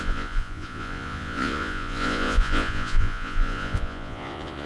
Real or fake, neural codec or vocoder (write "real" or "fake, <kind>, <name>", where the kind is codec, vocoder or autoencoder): fake, vocoder, Vocos